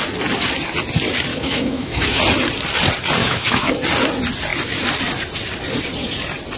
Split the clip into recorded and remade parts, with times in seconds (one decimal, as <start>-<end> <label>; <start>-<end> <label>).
0.0-1.3 recorded; 1.3-2.2 remade; 2.2-3.2 recorded; 3.2-3.7 remade; 3.7-6.6 recorded

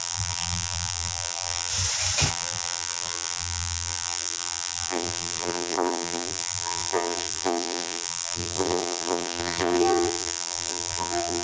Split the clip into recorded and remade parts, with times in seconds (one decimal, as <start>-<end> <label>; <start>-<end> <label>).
0.0-1.7 remade; 1.7-2.3 recorded; 2.3-11.4 remade

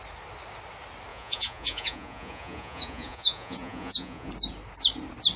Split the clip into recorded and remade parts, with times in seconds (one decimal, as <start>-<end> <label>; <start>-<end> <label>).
0.0-1.1 recorded; 1.1-4.3 remade; 4.3-5.4 recorded

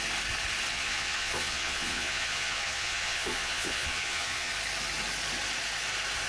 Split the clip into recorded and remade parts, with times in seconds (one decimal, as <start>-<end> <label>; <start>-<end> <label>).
0.0-0.7 recorded; 0.7-4.5 remade; 4.5-6.3 recorded

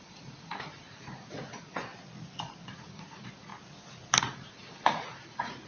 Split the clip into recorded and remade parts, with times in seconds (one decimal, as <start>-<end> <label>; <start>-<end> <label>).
0.0-1.9 remade; 1.9-2.7 recorded; 2.7-3.5 remade; 3.5-4.2 recorded; 4.2-5.7 remade

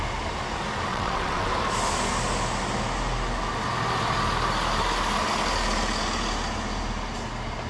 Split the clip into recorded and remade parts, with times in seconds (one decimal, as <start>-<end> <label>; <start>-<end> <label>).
0.0-0.9 recorded; 0.9-1.5 remade; 1.5-7.7 recorded

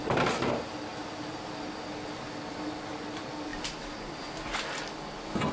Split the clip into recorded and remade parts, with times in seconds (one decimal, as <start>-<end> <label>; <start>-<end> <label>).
0.0-5.5 recorded